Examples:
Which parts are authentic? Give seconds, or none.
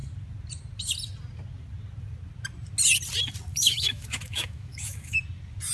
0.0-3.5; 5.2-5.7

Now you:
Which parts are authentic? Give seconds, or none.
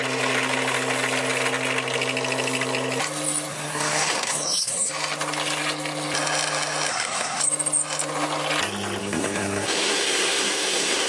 0.0-3.5; 4.9-6.9; 7.4-9.0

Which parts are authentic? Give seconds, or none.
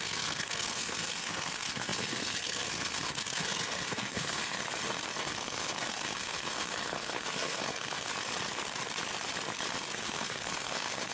4.6-5.2; 8.1-10.0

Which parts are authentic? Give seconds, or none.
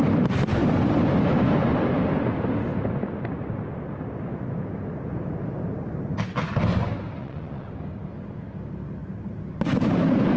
0.0-7.2; 7.7-10.4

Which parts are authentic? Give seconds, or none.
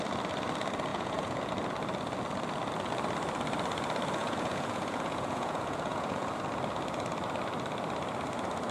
0.0-0.9; 1.5-4.2; 6.3-8.7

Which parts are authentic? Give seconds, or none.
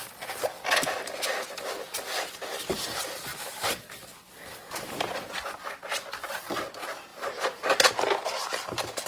0.0-3.3; 4.0-7.1; 7.9-9.1